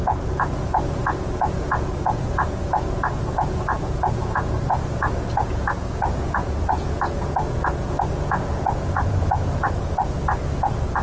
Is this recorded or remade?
remade